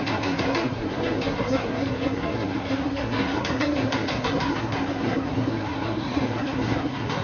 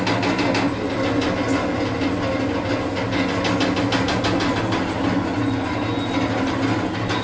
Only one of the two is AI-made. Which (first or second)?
first